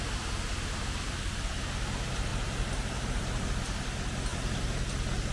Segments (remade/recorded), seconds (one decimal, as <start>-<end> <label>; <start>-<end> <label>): 0.0-2.3 recorded; 2.3-3.4 remade; 3.4-4.3 recorded; 4.3-4.8 remade; 4.8-5.3 recorded